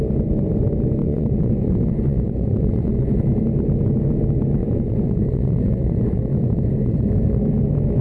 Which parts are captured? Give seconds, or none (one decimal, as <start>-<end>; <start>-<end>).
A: 0.0-1.0; 3.2-4.6; 7.1-8.0